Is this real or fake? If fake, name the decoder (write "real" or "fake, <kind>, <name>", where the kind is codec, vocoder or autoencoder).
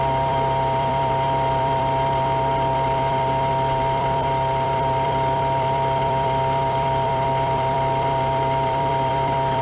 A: fake, vocoder, BigVGAN v2